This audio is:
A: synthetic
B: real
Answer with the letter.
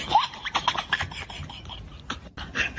B